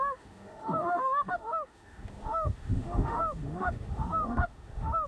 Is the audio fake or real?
fake